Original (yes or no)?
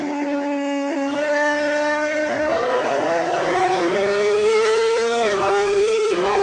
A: no